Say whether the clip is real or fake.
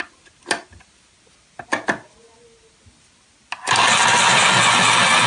real